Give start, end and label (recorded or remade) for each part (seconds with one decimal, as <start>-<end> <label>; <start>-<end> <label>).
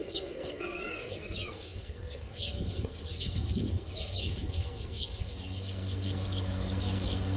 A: 0.0-7.4 remade